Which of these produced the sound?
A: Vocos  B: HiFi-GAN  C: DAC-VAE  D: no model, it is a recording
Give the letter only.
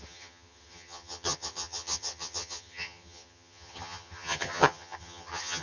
B